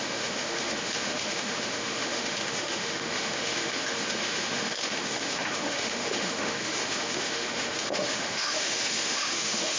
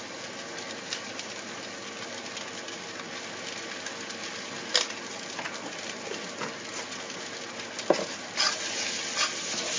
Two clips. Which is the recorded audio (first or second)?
second